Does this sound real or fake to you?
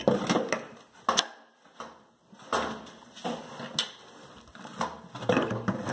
real